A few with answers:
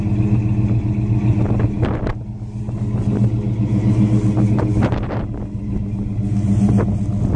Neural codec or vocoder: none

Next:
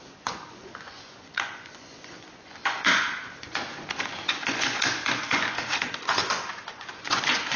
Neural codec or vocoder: vocoder, Vocos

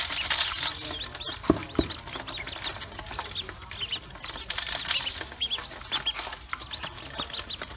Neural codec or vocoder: none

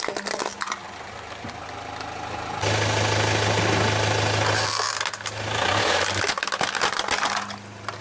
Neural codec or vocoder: none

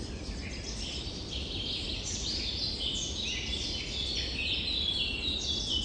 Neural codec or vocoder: none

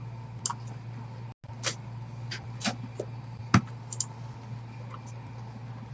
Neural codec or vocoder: none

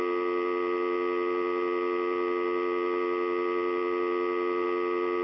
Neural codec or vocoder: none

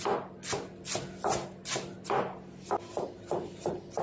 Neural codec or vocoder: none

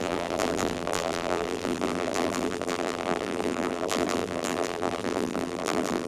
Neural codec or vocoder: vocoder, BigVGAN v2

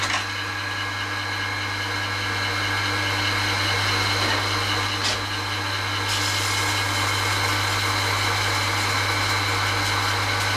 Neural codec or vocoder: none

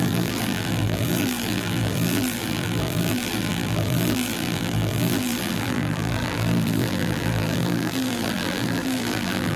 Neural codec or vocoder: vocoder, BigVGAN v2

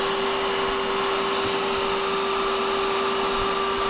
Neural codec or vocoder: none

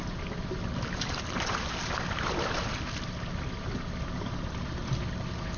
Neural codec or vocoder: none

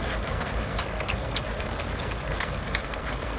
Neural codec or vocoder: codec, SNAC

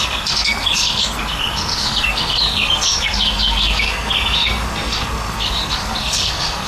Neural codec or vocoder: codec, SNAC